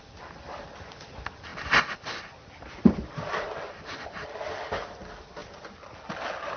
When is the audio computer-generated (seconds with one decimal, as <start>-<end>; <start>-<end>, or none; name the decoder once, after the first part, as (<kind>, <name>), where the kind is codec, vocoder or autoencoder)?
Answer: none